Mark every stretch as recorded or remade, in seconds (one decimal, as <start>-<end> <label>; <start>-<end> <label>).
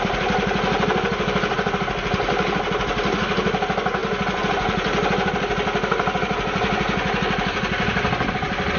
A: 0.0-8.8 recorded